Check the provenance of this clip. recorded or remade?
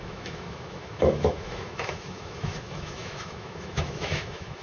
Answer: remade